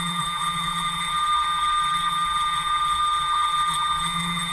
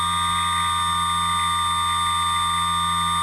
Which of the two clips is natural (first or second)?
second